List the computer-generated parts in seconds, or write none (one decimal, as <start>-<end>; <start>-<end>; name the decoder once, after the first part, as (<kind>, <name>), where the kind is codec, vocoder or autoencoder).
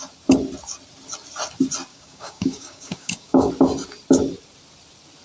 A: 1.9-3.5 (codec, DAC)